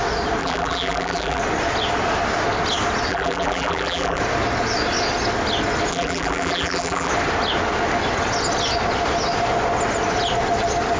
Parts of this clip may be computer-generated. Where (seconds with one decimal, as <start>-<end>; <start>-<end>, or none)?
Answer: 0.4-1.4; 3.1-4.2; 5.9-7.1